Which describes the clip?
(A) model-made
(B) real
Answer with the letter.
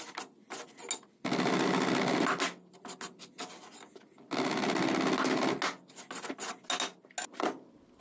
B